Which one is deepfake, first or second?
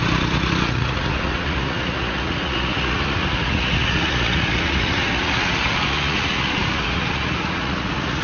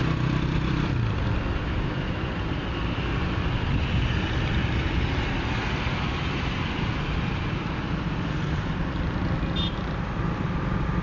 first